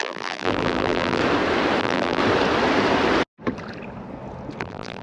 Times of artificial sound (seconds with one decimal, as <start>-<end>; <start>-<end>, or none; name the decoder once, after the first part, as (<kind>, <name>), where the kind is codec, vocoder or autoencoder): 0.0-1.2 (vocoder, BigVGAN v2); 1.8-2.2; 4.6-5.0